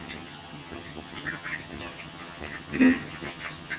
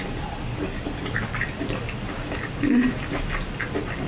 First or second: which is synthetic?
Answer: first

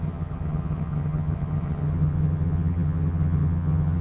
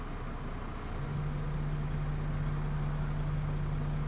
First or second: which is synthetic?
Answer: first